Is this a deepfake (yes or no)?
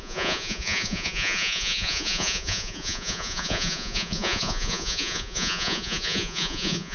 yes